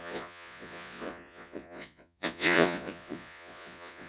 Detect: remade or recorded remade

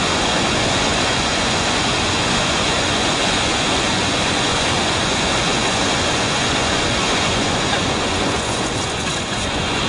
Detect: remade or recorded remade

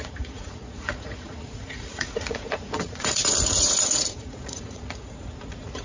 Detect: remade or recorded remade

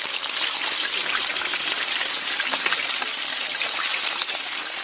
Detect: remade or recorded recorded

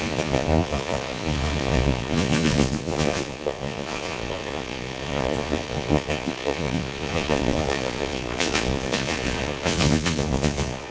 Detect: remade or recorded remade